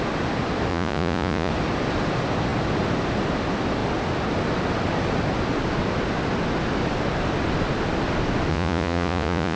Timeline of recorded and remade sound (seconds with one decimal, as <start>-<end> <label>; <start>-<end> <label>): 0.0-0.7 recorded; 0.7-1.5 remade; 1.5-8.5 recorded; 8.5-9.6 remade